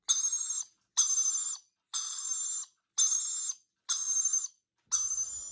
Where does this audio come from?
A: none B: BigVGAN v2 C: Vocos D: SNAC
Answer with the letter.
A